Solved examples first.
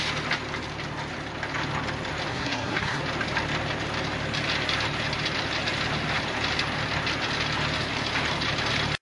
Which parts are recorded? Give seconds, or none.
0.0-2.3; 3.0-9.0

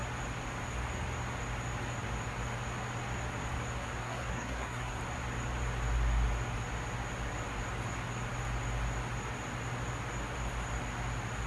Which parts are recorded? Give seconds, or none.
0.0-4.0; 5.0-11.5

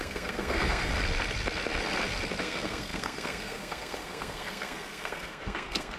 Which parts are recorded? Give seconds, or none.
0.9-2.4

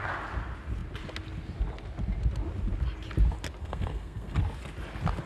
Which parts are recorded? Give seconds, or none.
0.0-3.6; 4.4-5.3

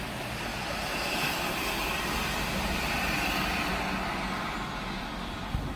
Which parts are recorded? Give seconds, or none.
0.0-5.8

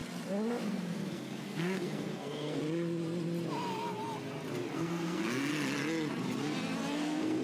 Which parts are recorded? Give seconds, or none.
0.0-0.7; 2.6-4.7; 5.5-6.9

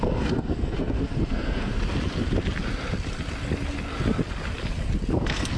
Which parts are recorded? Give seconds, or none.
1.7-5.1